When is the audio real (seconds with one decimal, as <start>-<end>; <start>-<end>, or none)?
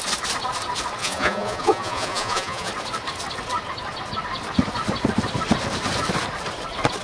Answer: 0.0-1.0; 2.7-7.0